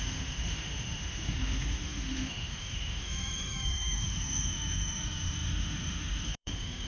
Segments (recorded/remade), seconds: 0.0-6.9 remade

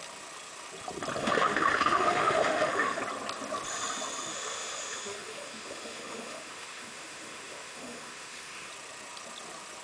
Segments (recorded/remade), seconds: 0.0-1.2 recorded; 1.2-3.0 remade; 3.0-4.3 recorded; 4.3-8.7 remade; 8.7-9.8 recorded

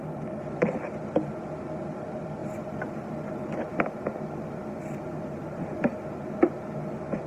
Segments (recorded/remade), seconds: 0.0-7.3 recorded

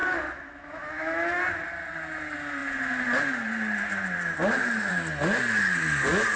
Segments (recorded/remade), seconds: 0.0-1.4 remade; 1.4-6.4 recorded

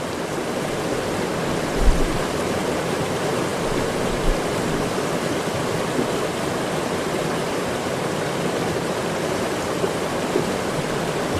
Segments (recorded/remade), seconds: 0.0-11.4 recorded

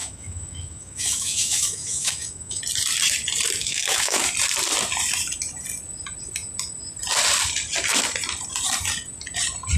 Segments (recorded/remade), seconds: 0.0-2.6 remade; 2.6-3.6 recorded; 3.6-4.2 remade; 4.2-9.8 recorded

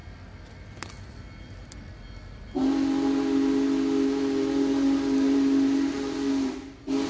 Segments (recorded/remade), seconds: 0.0-7.1 recorded